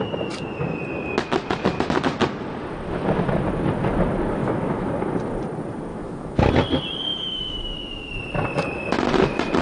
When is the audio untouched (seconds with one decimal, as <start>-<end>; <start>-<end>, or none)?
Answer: 0.0-4.4; 4.9-5.9; 6.5-7.1; 8.1-9.6